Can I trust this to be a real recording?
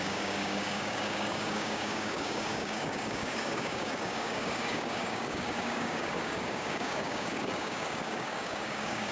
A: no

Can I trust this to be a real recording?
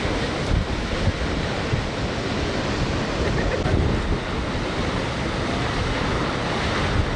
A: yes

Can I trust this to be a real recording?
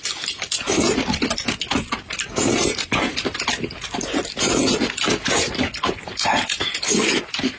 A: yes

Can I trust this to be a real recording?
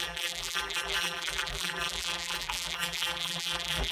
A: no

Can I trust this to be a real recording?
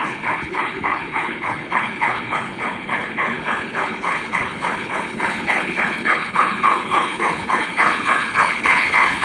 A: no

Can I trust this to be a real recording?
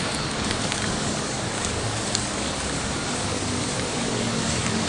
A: no